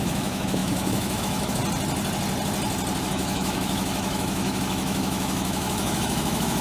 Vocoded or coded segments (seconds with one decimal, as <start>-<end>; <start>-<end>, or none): 0.0-1.6; 3.0-6.6